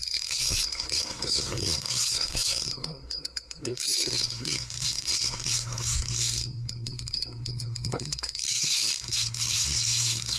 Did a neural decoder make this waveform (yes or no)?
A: yes